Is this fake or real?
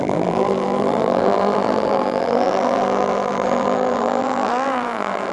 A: fake